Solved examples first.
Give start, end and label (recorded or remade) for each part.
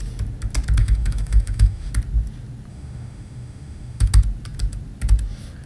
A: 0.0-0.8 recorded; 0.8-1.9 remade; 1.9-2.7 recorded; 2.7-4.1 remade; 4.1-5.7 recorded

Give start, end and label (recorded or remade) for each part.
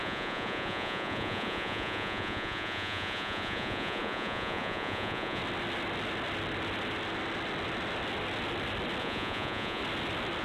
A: 0.0-5.4 remade; 5.4-9.0 recorded; 9.0-9.8 remade; 9.8-10.4 recorded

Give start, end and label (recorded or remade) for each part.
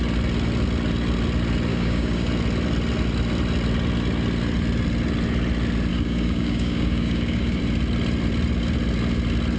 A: 0.0-1.7 recorded; 1.7-2.3 remade; 2.3-5.9 recorded; 5.9-7.6 remade; 7.6-9.6 recorded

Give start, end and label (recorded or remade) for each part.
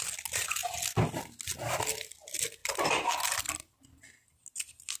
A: 0.0-2.6 recorded; 2.6-4.0 remade; 4.0-5.0 recorded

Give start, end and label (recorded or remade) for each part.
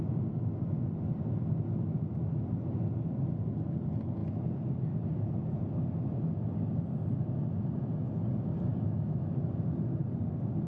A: 0.0-8.7 recorded; 8.7-9.3 remade; 9.3-10.7 recorded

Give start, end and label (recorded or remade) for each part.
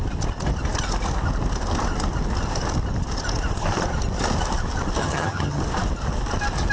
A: 0.0-5.0 recorded; 5.0-5.6 remade; 5.6-6.7 recorded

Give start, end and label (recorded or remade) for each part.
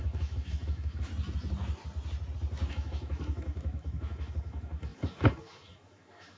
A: 0.0-1.1 remade; 1.1-2.7 recorded; 2.7-6.4 remade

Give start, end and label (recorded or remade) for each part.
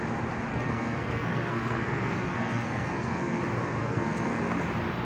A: 0.0-0.5 recorded; 0.5-3.4 remade; 3.4-3.8 recorded; 3.8-4.4 remade; 4.4-5.0 recorded